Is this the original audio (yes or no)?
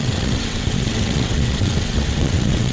no